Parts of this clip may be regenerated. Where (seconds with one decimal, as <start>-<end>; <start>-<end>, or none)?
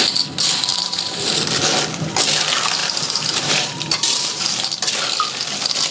0.7-1.4; 2.8-4.4